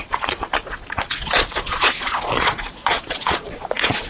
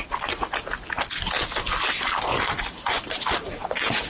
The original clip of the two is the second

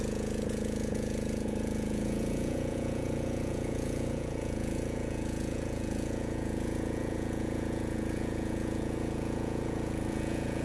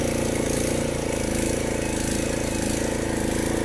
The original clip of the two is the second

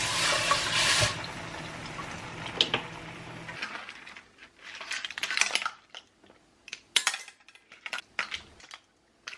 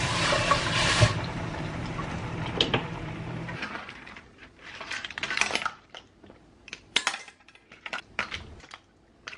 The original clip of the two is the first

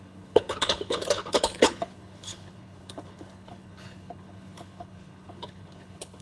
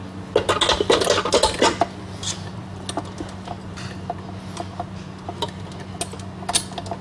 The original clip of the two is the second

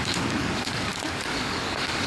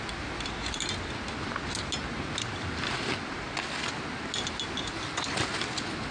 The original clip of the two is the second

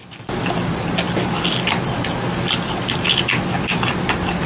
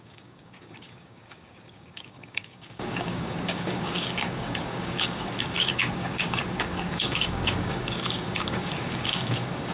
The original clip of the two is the first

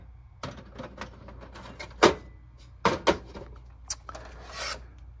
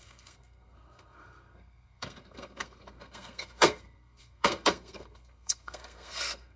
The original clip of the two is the first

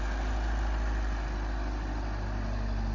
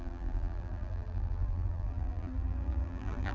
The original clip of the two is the first